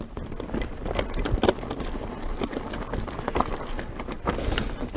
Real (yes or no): yes